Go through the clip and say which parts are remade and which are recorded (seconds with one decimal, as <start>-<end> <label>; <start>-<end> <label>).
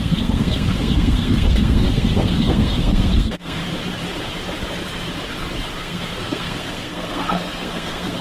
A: 0.0-3.6 remade; 3.6-5.8 recorded; 5.8-8.2 remade